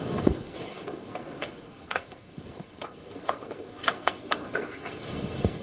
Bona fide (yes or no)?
no